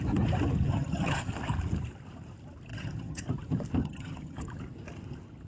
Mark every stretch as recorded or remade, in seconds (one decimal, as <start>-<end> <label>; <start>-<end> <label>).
0.0-0.7 recorded; 0.7-1.3 remade; 1.3-2.7 recorded; 2.7-3.2 remade; 3.2-3.8 recorded; 3.8-4.4 remade; 4.4-5.5 recorded

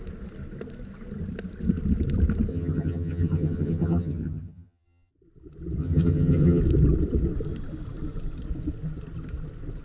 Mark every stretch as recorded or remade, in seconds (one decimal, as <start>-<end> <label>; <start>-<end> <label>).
0.0-2.5 recorded; 2.5-5.1 remade; 5.1-5.8 recorded; 5.8-6.6 remade; 6.6-9.8 recorded

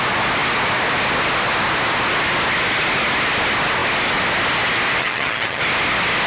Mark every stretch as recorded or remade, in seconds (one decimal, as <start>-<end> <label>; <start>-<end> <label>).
0.0-5.0 recorded; 5.0-5.6 remade; 5.6-6.3 recorded